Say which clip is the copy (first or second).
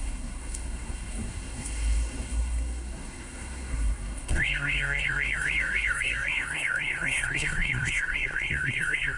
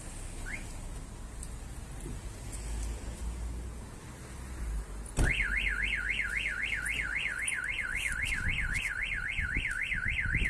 first